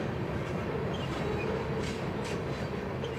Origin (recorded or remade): recorded